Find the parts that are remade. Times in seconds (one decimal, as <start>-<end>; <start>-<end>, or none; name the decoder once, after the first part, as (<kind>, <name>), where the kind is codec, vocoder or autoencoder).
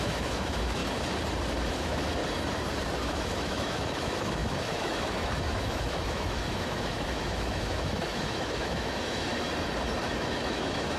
0.0-0.8 (autoencoder, DAC-VAE); 1.7-2.2; 3.1-9.3; 10.0-11.0